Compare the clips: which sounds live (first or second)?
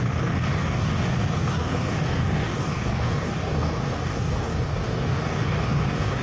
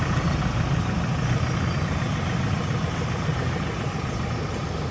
second